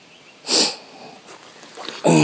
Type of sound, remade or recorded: recorded